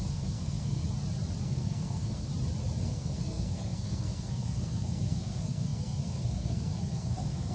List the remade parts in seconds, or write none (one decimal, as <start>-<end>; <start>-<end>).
0.0-0.8; 1.4-2.3; 2.8-7.5